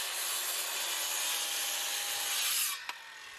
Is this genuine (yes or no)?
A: yes